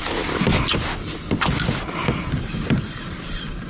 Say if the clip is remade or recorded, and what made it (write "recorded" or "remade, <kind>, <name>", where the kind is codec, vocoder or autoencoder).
recorded